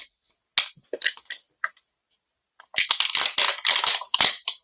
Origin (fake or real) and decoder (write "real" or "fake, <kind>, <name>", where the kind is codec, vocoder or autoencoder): real